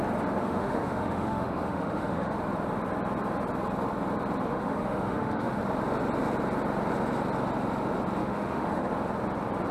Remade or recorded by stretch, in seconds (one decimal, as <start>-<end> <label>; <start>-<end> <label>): 0.0-0.4 recorded; 0.4-2.3 remade; 2.3-4.5 recorded; 4.5-5.6 remade; 5.6-8.2 recorded; 8.2-8.9 remade; 8.9-9.7 recorded